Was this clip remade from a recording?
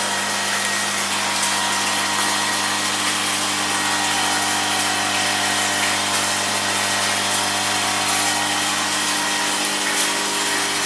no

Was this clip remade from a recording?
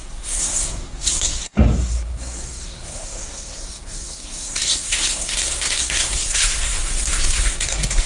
yes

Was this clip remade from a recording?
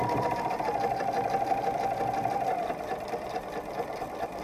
yes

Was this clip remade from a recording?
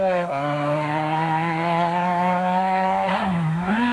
yes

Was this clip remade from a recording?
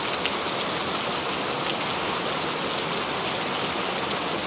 no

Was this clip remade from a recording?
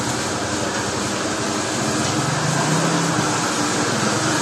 no